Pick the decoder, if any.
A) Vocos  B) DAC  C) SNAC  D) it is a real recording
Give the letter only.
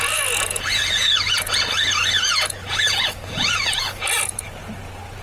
A